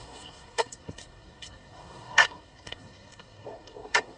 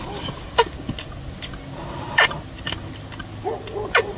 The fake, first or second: first